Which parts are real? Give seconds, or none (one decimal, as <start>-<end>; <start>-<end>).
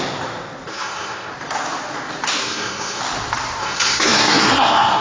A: 0.0-0.7; 1.3-2.4; 3.0-3.6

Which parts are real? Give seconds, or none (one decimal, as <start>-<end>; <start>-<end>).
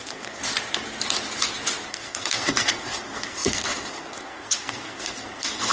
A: 0.4-1.9